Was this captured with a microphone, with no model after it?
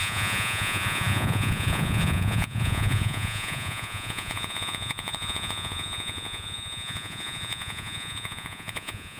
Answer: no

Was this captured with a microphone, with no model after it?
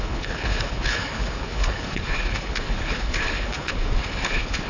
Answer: no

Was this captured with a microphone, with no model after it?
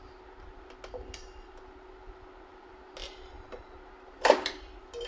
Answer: yes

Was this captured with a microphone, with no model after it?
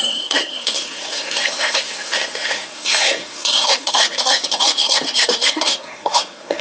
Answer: no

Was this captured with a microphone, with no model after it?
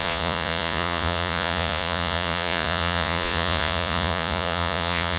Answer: no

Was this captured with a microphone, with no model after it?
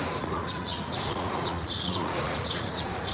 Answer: no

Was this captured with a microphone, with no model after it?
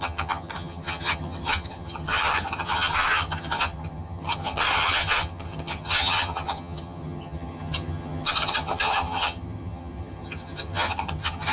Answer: no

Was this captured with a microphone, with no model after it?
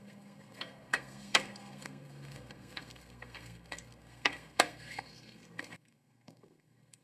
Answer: no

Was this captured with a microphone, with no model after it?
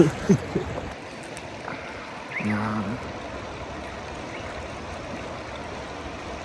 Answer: yes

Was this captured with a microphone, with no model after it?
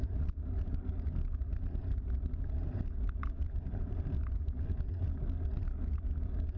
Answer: yes